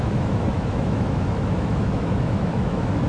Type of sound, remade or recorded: remade